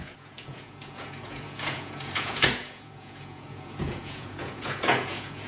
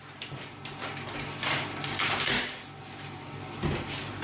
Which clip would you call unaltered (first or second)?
second